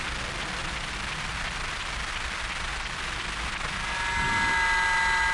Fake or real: real